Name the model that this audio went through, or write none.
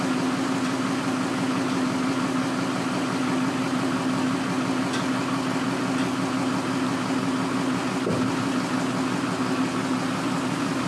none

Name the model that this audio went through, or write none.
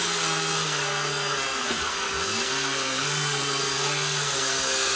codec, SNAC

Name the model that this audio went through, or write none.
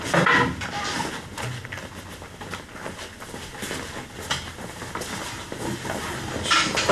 none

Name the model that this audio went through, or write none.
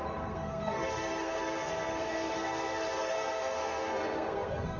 codec, SNAC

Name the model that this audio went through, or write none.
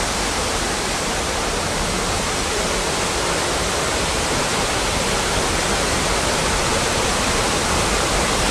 none